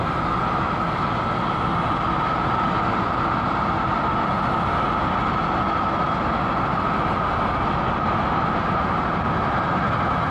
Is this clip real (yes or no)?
yes